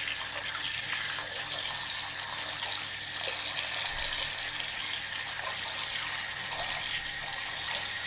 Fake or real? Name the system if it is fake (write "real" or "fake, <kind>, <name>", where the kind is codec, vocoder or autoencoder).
real